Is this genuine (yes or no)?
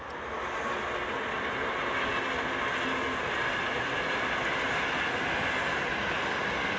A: yes